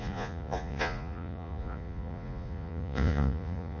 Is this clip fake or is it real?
fake